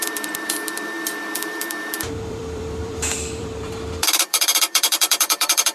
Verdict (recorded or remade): remade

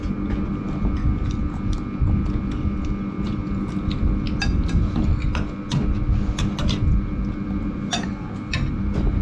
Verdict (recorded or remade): recorded